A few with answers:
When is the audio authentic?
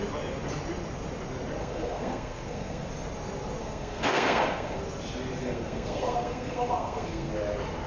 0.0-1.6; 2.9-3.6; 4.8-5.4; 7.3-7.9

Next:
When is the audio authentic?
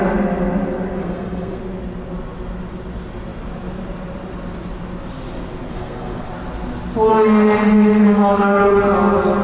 0.0-1.0; 1.6-5.7; 6.3-7.1; 8.6-9.4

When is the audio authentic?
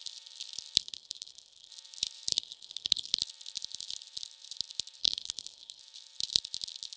0.0-0.8; 1.7-2.3; 3.2-5.0; 5.8-7.0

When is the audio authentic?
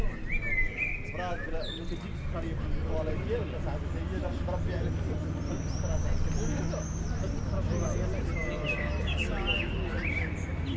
0.0-10.8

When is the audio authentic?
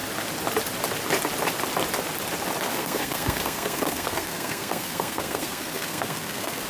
0.0-2.7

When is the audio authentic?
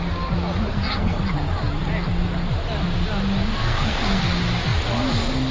0.0-0.7; 1.2-3.6; 4.2-5.5